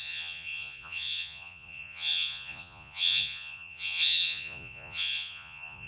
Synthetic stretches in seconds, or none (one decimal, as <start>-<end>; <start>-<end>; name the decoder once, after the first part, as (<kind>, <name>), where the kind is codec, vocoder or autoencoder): 0.0-5.9 (vocoder, Vocos)